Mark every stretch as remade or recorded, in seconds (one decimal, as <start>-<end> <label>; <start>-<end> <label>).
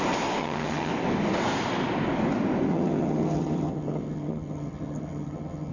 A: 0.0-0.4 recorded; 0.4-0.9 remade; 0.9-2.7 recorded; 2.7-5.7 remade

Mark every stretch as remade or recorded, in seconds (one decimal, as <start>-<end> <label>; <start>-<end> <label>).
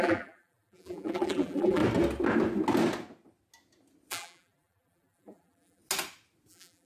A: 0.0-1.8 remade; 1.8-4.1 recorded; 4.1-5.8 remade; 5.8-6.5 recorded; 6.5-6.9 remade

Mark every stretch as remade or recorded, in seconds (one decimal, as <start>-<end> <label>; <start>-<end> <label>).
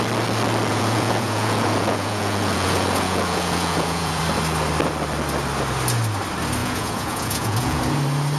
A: 0.0-0.7 recorded; 0.7-4.2 remade; 4.2-6.6 recorded; 6.6-7.8 remade; 7.8-8.4 recorded